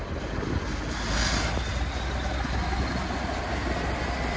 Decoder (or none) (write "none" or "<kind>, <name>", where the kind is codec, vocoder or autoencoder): none